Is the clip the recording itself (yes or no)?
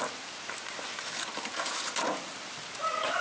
yes